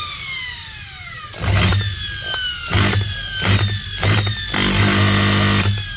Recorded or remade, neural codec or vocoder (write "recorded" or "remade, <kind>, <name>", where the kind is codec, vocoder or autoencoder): recorded